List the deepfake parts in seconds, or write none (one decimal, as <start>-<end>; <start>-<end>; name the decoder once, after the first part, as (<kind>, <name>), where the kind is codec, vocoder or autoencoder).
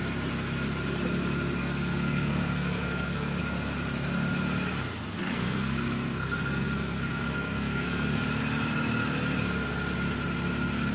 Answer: 1.6-3.4 (codec, SNAC); 5.2-8.2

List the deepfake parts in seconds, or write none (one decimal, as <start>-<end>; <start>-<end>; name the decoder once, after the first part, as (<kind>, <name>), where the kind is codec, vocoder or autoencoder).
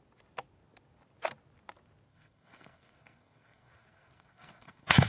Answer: 2.1-5.1 (codec, SNAC)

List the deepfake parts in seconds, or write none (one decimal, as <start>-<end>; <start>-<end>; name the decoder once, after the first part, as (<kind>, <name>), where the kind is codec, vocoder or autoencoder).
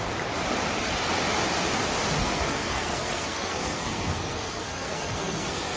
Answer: 2.2-5.8 (codec, SNAC)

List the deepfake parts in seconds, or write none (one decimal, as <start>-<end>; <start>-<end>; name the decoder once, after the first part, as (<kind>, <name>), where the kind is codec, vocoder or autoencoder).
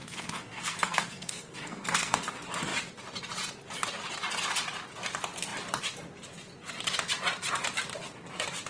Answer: 0.0-2.3 (codec, SNAC)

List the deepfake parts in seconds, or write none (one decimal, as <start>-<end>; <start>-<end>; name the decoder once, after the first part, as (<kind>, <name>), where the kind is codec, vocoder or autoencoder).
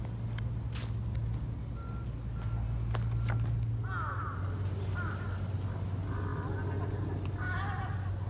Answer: none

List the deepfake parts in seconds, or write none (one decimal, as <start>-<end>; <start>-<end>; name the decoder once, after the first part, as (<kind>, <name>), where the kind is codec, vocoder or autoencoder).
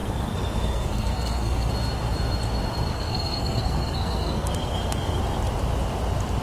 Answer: 0.0-1.7 (codec, SNAC); 2.9-5.2